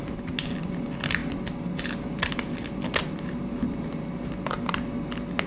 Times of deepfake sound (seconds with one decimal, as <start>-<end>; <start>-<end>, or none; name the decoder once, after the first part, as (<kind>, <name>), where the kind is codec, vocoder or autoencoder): none